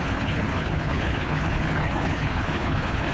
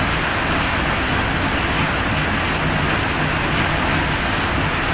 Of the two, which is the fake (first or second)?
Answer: first